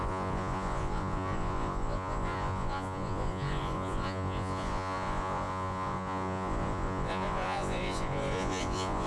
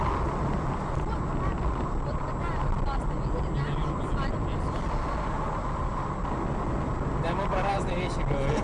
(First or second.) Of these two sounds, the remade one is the first